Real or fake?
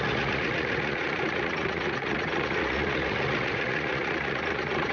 fake